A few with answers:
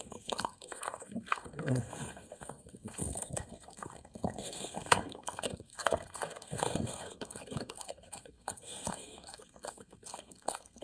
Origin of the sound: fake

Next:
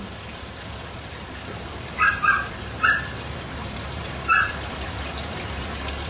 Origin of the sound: fake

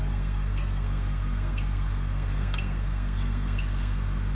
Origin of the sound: fake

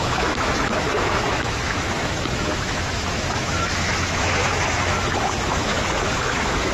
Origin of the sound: fake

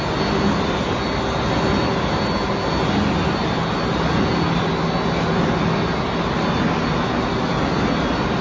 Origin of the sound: real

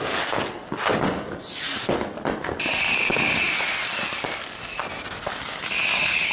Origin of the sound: real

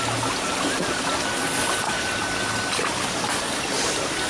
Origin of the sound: real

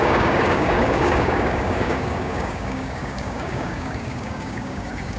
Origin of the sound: fake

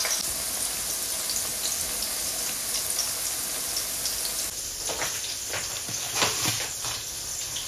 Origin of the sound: real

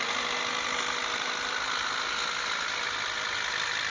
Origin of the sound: real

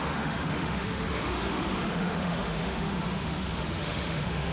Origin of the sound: fake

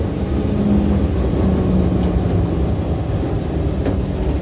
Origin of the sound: real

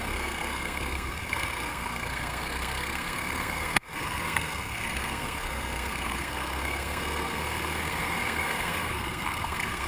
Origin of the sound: fake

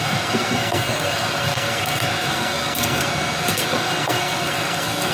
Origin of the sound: fake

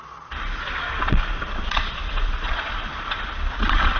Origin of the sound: fake